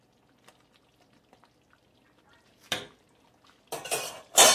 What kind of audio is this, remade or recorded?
recorded